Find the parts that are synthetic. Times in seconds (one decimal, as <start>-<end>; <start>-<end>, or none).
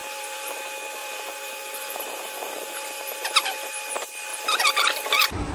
0.0-0.6; 1.0-3.9; 4.3-5.5